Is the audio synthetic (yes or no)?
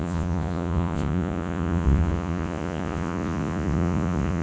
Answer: yes